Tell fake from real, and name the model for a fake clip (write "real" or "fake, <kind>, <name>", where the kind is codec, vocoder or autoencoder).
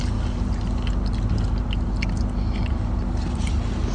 real